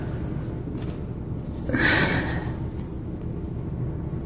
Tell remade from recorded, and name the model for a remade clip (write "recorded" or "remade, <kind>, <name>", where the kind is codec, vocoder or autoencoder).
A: recorded